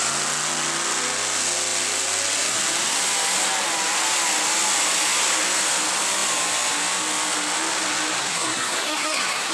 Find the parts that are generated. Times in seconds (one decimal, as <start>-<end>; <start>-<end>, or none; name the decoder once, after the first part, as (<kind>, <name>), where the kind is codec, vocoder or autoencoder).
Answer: 8.2-9.5 (codec, SNAC)